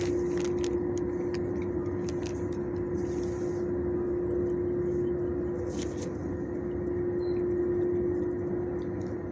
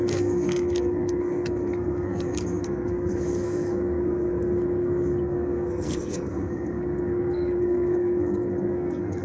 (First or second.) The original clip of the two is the first